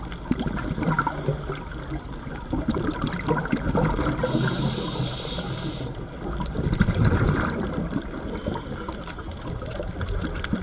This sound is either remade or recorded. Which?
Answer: recorded